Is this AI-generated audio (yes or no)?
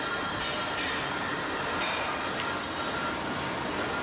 no